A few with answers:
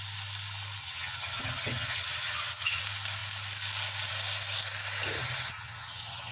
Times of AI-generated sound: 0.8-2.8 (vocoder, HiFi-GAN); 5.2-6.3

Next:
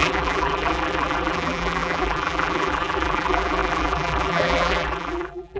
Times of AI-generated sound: 0.0-5.6 (vocoder, BigVGAN v2)

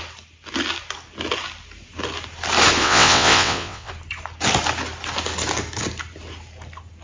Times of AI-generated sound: 2.8-3.9 (vocoder, WaveNeXt)

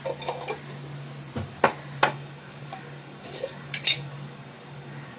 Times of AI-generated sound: 2.0-5.2 (codec, DAC)

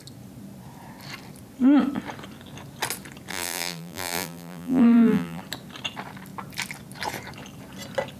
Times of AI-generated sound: 3.3-5.4 (vocoder, BigVGAN v2)

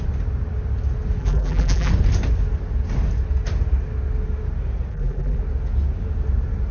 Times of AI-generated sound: 1.2-1.9 (vocoder, BigVGAN v2); 4.9-5.4

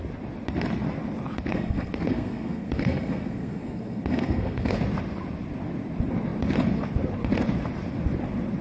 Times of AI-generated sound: 1.5-4.8 (codec, SNAC)